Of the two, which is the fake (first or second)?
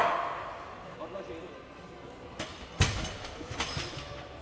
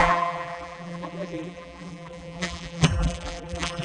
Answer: second